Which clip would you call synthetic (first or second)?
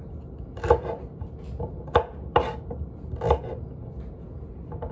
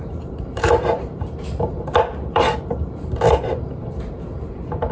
second